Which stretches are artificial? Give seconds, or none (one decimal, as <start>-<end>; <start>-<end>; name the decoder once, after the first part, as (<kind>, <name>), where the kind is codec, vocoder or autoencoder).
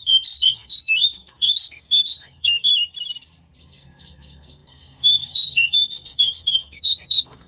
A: 0.0-2.7 (codec, SNAC); 3.6-7.5